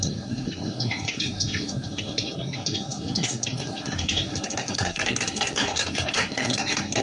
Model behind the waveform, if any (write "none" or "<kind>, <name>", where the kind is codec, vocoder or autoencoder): codec, SNAC